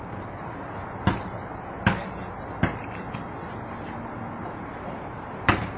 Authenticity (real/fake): real